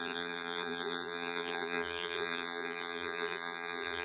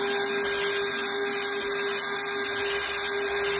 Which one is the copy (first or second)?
first